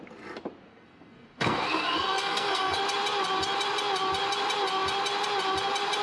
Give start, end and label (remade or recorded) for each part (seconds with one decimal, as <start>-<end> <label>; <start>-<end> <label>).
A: 0.0-0.7 recorded; 0.7-2.8 remade; 2.8-6.0 recorded